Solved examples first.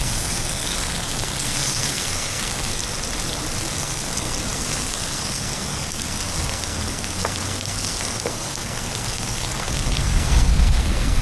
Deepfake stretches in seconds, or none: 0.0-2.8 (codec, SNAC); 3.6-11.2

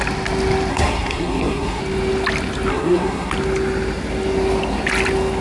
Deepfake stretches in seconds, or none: 0.7-1.8 (codec, SNAC); 2.7-3.3

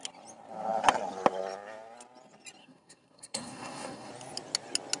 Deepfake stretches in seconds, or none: 2.6-4.1 (codec, SNAC)